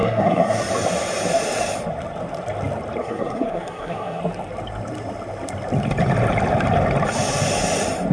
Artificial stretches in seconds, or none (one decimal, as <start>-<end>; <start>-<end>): 0.0-0.7; 3.0-4.2